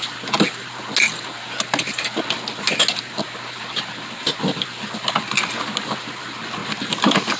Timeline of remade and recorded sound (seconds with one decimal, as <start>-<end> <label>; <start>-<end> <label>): 0.0-7.4 recorded